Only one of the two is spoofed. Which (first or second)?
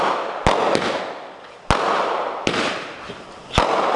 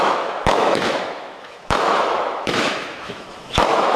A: second